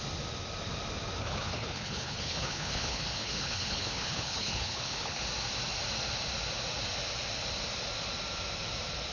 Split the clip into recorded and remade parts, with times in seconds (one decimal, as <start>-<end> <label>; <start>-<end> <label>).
0.0-1.2 recorded; 1.2-5.2 remade; 5.2-9.1 recorded